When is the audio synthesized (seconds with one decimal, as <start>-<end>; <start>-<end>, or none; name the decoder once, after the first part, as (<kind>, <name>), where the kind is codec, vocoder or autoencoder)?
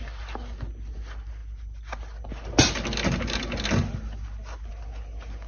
none